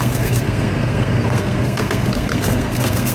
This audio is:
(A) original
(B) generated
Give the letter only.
B